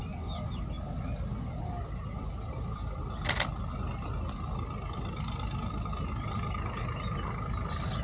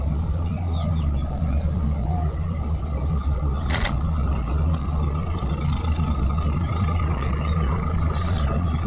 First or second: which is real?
first